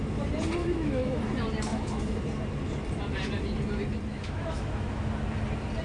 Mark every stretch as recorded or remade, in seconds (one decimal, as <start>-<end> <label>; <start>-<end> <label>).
0.0-0.6 recorded; 0.6-1.2 remade; 1.2-1.7 recorded; 1.7-2.2 remade; 2.2-4.1 recorded; 4.1-5.0 remade; 5.0-5.8 recorded